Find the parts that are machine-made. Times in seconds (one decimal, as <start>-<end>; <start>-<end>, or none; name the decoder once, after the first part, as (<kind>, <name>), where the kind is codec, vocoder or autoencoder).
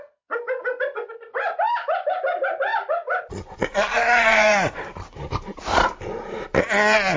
3.9-5.9 (vocoder, BigVGAN v2)